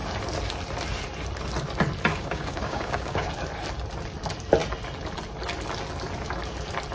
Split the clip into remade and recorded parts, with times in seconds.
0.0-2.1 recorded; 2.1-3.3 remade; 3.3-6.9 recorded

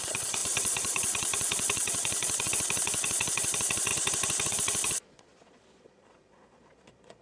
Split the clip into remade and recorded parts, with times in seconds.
0.0-3.9 remade; 3.9-4.5 recorded; 4.5-7.2 remade